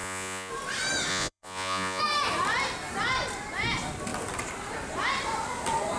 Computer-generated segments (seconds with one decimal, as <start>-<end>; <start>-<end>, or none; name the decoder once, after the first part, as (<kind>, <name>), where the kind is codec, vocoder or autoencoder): 0.0-0.5 (vocoder, Vocos); 1.1-2.0